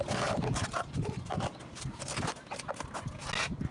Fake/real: real